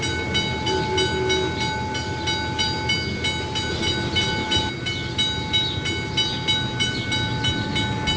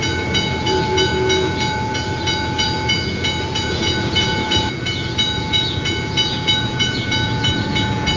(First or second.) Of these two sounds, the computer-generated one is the second